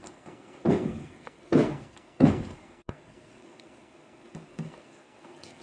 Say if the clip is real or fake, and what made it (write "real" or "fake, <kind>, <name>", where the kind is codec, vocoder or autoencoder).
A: fake, codec, SNAC